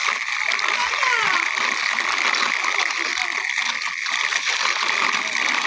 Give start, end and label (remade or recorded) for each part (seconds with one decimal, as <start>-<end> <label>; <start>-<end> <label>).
0.0-5.7 recorded